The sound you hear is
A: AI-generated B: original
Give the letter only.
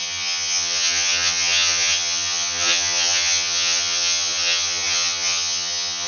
A